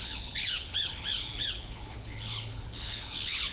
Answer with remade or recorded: remade